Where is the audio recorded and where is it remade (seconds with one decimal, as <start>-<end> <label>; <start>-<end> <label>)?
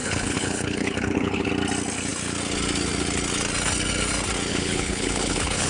0.0-1.5 remade; 1.5-4.5 recorded; 4.5-5.7 remade